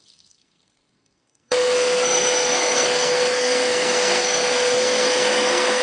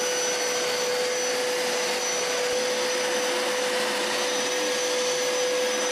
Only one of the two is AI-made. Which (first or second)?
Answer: first